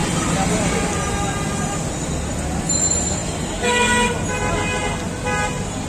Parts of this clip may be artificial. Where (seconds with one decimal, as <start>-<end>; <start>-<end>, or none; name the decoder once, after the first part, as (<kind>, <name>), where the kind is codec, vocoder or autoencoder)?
none